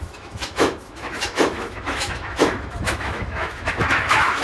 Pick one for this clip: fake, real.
fake